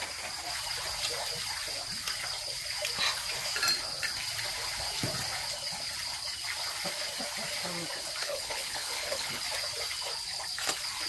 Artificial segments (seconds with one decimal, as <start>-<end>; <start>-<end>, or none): 8.2-9.4